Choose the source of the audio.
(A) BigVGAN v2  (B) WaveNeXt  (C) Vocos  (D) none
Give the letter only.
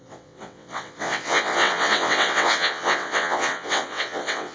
B